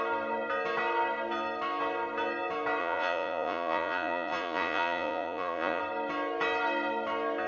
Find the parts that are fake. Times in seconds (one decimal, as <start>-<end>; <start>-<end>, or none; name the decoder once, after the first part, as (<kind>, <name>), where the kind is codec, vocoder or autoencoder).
2.8-5.8 (vocoder, Vocos)